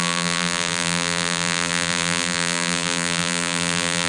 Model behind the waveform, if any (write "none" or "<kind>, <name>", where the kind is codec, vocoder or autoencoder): vocoder, BigVGAN v2